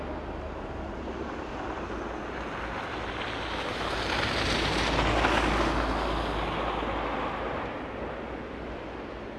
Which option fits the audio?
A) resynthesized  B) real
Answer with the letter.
B